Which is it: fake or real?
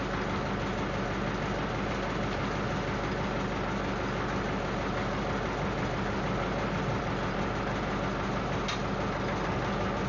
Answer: real